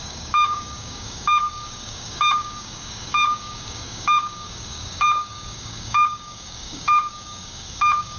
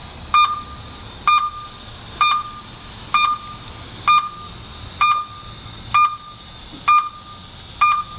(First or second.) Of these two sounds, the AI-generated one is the first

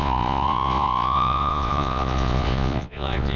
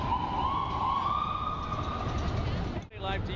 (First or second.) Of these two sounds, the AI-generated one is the first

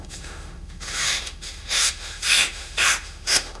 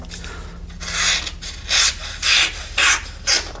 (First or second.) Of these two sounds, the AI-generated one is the first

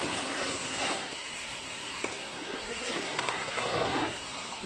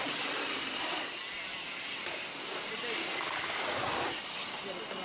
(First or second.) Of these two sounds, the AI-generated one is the first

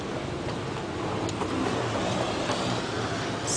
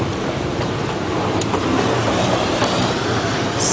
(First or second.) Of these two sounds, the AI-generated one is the second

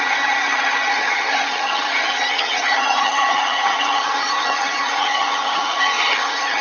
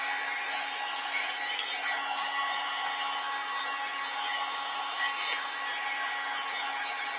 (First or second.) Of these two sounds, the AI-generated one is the first